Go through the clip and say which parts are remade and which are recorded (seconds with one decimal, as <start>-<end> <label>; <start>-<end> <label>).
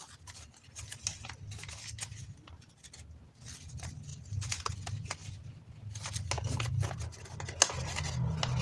0.0-8.6 recorded